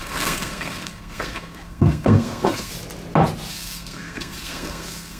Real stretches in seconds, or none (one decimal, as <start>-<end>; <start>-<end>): 2.7-3.5

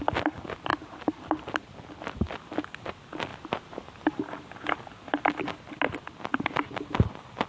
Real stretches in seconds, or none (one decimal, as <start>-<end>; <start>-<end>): 0.0-0.7; 1.9-3.3; 4.2-7.5

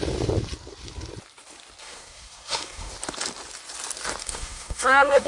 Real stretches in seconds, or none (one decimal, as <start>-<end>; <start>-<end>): 0.0-1.8; 2.9-4.2

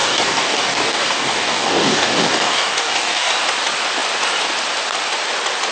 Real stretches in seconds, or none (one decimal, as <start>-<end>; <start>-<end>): 3.3-5.7

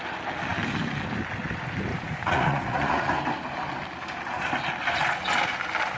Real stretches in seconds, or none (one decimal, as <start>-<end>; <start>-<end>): 0.0-1.9; 3.1-6.0

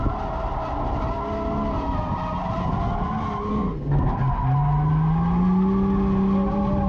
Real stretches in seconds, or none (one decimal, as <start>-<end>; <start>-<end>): 0.0-3.5; 4.2-6.9